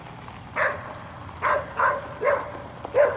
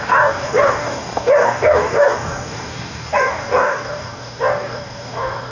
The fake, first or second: second